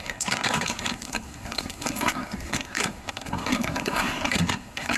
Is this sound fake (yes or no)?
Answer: yes